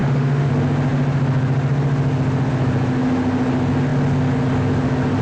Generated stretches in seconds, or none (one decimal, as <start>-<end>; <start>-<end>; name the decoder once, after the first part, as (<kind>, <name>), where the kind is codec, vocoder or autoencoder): 0.0-0.5 (autoencoder, DAC-VAE)